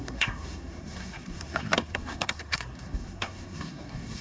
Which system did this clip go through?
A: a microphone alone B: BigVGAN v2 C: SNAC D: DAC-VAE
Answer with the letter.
C